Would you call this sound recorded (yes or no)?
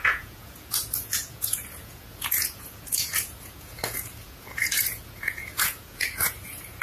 no